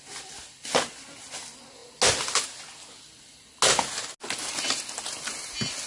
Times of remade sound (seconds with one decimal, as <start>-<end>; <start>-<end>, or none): none